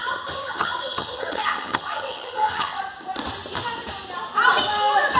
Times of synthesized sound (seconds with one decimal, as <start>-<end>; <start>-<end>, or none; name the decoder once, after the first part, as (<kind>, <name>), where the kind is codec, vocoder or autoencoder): 0.0-2.8 (vocoder, HiFi-GAN)